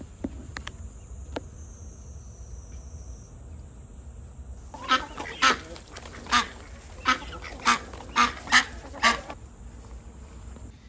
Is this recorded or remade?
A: recorded